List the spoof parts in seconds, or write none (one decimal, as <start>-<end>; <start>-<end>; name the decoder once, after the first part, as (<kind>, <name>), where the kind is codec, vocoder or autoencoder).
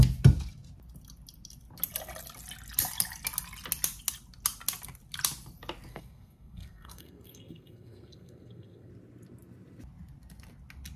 5.9-8.9 (codec, SNAC)